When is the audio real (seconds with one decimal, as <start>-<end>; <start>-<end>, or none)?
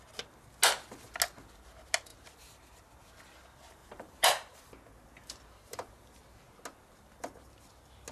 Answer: 0.0-3.8; 4.7-5.2; 5.9-8.1